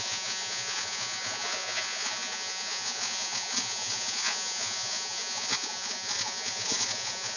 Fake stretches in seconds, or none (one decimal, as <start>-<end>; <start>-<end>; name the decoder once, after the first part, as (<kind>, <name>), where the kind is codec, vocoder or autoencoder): 0.0-7.4 (vocoder, Vocos)